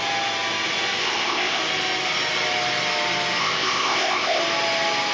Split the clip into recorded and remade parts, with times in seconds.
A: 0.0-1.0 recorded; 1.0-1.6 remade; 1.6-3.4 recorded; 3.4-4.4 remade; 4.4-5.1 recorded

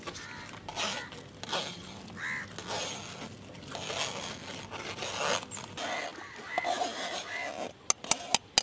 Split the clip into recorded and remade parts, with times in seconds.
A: 0.0-8.6 recorded

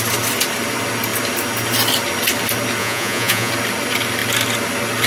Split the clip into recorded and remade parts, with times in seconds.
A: 0.0-2.8 recorded; 2.8-3.5 remade; 3.5-5.1 recorded

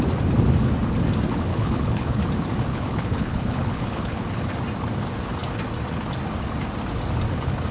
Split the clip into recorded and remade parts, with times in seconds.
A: 0.0-1.5 recorded; 1.5-2.2 remade; 2.2-2.7 recorded; 2.7-4.2 remade; 4.2-7.7 recorded

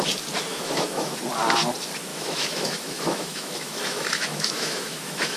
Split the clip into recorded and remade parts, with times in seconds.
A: 0.0-0.5 recorded; 0.5-1.2 remade; 1.2-2.1 recorded; 2.1-5.4 remade

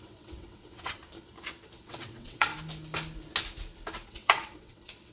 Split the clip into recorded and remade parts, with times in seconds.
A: 0.0-1.0 remade; 1.0-1.8 recorded; 1.8-2.5 remade; 2.5-4.1 recorded; 4.1-5.1 remade